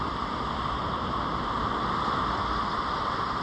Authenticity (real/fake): real